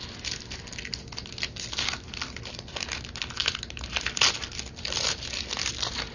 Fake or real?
real